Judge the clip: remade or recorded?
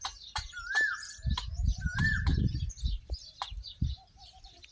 remade